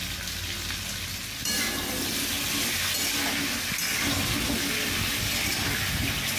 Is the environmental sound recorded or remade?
recorded